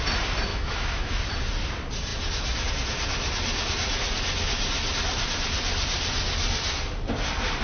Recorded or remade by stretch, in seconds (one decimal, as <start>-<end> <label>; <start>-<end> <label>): 0.0-0.5 recorded; 0.5-1.2 remade; 1.2-7.6 recorded